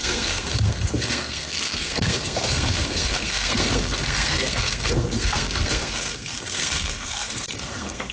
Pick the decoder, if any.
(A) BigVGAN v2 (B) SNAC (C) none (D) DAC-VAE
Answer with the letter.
B